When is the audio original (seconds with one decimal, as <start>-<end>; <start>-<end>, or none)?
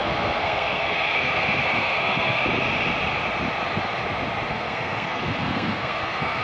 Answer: 2.4-4.5